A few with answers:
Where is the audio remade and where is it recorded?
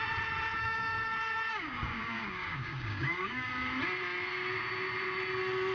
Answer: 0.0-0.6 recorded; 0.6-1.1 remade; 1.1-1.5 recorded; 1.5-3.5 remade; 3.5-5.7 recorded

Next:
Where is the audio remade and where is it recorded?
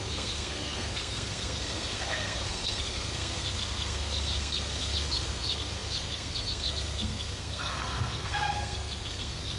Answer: 0.0-9.6 remade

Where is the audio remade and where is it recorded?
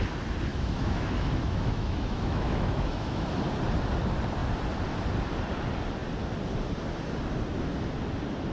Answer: 0.0-0.5 recorded; 0.5-3.3 remade; 3.3-8.5 recorded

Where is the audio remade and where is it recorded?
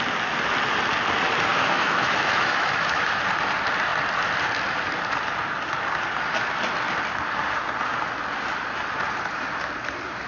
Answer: 0.0-1.5 recorded; 1.5-3.1 remade; 3.1-10.3 recorded